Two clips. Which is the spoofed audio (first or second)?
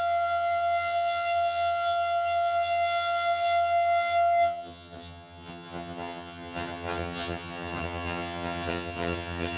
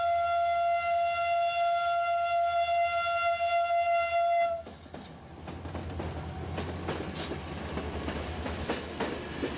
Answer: first